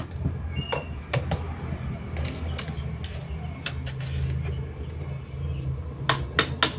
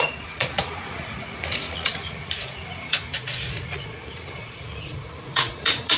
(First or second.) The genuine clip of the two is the first